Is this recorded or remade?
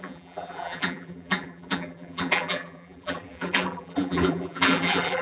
remade